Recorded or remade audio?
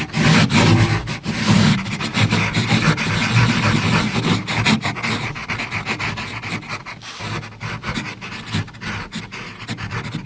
recorded